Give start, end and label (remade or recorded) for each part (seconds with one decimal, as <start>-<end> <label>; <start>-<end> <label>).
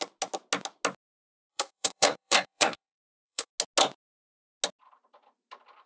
0.0-1.5 recorded; 1.5-3.5 remade; 3.5-5.9 recorded